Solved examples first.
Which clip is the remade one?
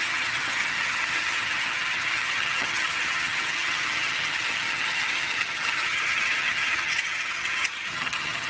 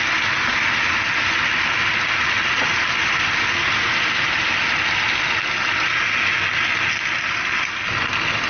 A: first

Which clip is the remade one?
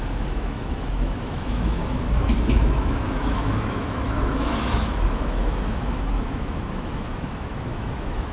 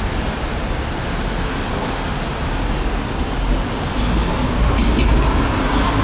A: first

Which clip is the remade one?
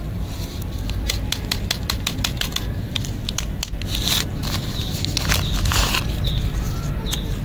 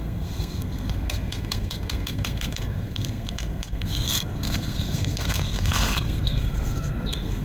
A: second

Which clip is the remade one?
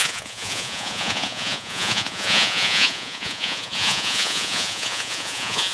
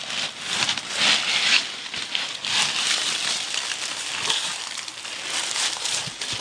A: first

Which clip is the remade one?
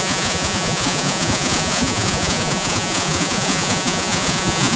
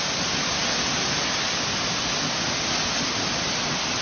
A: first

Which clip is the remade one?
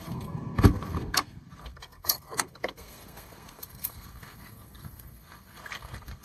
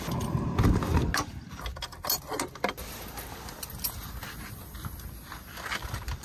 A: first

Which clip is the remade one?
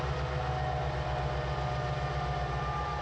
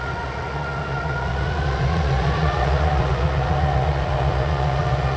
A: second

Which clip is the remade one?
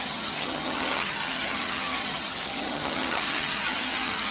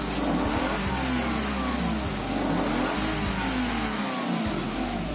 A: first